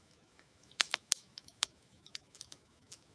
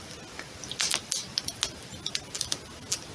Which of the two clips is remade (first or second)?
first